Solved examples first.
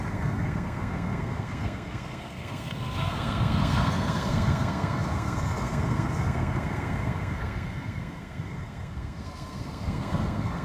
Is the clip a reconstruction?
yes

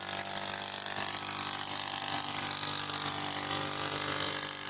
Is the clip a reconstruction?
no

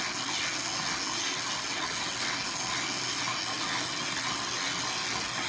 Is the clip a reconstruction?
no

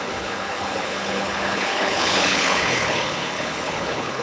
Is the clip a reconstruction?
yes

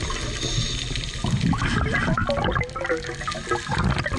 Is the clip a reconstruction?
no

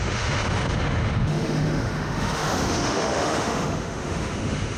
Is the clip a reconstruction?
yes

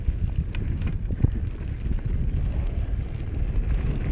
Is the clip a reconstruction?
no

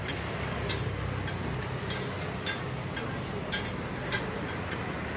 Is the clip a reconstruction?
no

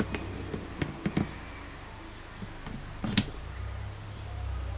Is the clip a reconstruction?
no